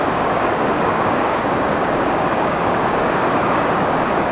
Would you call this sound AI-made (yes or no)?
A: yes